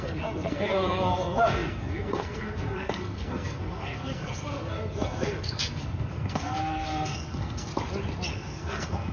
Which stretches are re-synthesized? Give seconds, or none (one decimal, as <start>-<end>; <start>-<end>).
0.0-7.7; 8.3-9.1